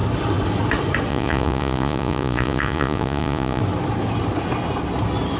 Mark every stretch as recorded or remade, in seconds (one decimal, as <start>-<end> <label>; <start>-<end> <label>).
0.0-1.1 recorded; 1.1-3.6 remade; 3.6-5.4 recorded